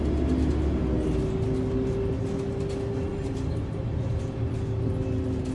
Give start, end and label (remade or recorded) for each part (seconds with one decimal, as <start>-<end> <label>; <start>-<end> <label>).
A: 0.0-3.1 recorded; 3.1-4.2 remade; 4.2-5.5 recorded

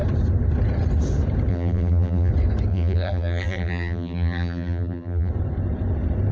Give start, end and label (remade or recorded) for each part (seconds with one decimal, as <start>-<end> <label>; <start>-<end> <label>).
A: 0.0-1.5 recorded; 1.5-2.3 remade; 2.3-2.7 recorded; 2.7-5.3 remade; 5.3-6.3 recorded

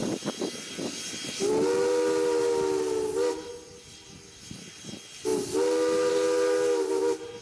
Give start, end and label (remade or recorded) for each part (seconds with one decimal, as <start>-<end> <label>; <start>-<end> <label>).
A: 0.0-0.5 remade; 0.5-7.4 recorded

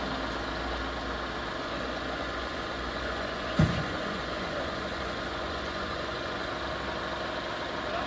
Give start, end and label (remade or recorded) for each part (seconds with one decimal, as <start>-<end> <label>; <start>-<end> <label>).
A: 0.0-1.6 recorded; 1.6-6.5 remade; 6.5-8.1 recorded

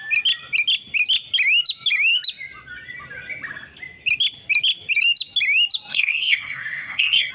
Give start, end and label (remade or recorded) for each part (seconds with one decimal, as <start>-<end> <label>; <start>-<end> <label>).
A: 0.0-5.9 recorded; 5.9-7.3 remade

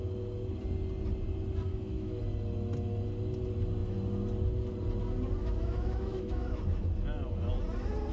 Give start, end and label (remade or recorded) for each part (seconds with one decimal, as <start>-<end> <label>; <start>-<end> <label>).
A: 0.0-1.7 recorded; 1.7-2.2 remade; 2.2-5.4 recorded; 5.4-6.6 remade; 6.6-8.1 recorded

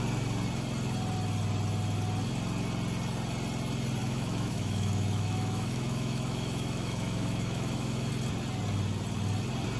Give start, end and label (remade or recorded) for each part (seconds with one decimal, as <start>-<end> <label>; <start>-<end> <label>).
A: 0.0-4.0 recorded; 4.0-8.1 remade; 8.1-9.8 recorded